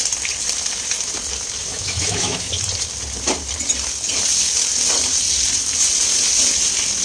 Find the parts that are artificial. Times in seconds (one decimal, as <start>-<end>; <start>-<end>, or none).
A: 1.7-2.5